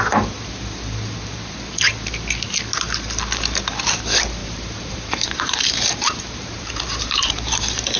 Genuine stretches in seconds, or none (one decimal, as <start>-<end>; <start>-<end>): 0.0-4.4